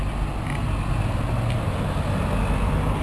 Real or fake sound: real